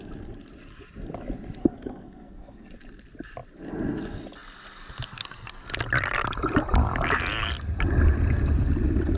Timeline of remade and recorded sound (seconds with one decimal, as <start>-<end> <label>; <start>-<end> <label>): 0.0-1.6 recorded; 1.6-2.7 remade; 2.7-9.2 recorded

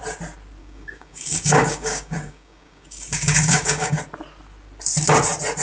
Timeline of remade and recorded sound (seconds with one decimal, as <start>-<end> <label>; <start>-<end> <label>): 0.0-0.6 recorded; 0.6-4.0 remade; 4.0-5.6 recorded

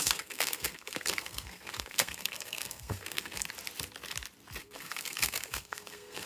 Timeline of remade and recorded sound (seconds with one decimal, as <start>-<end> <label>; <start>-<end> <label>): 0.0-3.4 remade; 3.4-4.6 recorded; 4.6-6.3 remade

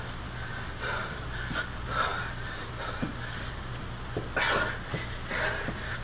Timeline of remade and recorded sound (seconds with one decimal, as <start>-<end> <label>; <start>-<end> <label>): 0.0-6.0 recorded

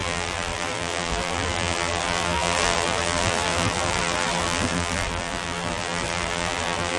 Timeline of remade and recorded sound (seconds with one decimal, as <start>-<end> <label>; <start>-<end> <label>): 0.0-7.0 remade